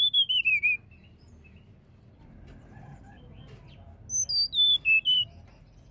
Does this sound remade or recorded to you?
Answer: recorded